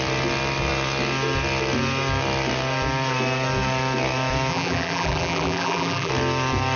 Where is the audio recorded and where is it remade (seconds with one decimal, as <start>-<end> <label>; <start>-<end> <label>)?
0.0-4.5 recorded; 4.5-6.1 remade; 6.1-6.8 recorded